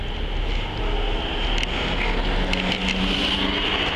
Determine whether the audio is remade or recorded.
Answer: recorded